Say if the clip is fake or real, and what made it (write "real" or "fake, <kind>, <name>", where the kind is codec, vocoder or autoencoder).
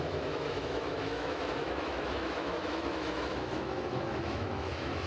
fake, autoencoder, DAC-VAE